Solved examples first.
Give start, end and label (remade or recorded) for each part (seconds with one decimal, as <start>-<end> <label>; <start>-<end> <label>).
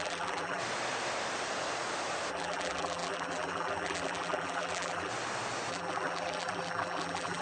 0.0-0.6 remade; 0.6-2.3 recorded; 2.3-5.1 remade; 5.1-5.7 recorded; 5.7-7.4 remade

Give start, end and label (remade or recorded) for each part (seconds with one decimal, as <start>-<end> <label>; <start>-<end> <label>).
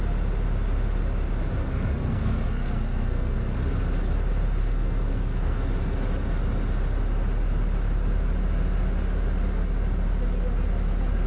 0.0-1.6 recorded; 1.6-3.6 remade; 3.6-4.6 recorded; 4.6-5.7 remade; 5.7-11.3 recorded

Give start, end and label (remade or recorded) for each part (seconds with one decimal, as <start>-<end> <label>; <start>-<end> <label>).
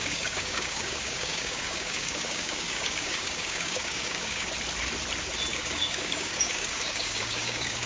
0.0-4.5 remade; 4.5-5.5 recorded; 5.5-7.9 remade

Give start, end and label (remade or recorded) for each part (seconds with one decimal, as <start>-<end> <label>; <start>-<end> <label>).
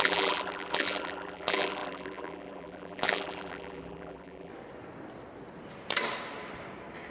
0.0-4.5 remade; 4.5-7.1 recorded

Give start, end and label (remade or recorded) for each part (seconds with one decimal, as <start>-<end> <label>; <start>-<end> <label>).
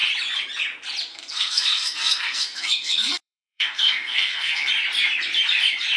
0.0-1.1 recorded; 1.1-4.7 remade; 4.7-6.0 recorded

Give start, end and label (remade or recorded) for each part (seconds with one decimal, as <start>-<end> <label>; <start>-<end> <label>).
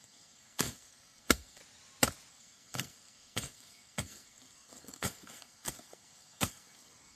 0.0-1.6 remade; 1.6-2.3 recorded; 2.3-7.2 remade